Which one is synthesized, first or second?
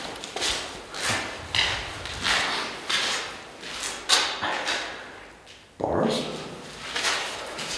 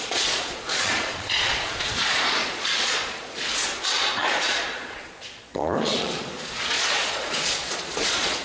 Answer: second